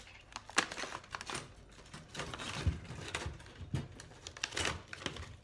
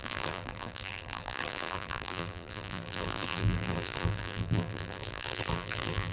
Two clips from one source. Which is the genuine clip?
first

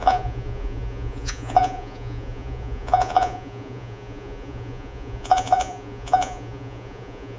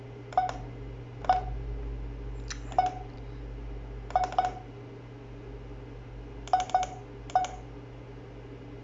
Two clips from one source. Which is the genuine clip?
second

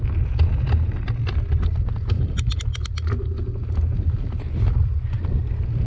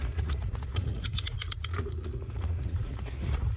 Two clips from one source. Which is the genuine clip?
first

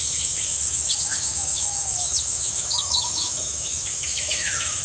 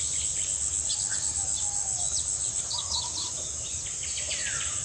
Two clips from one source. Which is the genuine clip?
second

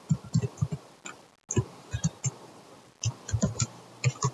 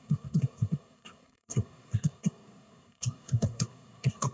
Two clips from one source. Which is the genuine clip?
first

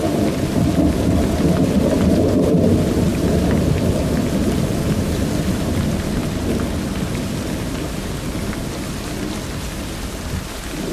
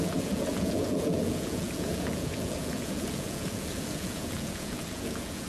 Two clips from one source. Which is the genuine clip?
first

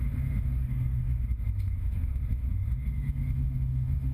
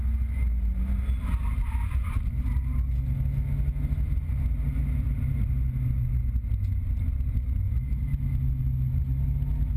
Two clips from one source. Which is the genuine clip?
second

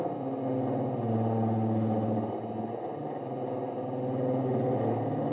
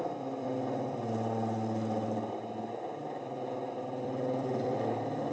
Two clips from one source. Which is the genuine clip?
first